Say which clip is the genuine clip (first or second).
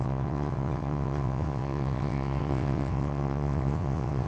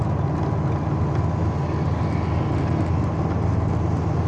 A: second